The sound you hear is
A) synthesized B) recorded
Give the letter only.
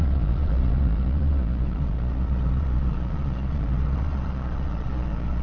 A